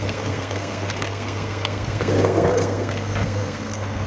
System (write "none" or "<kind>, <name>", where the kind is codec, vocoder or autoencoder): codec, SNAC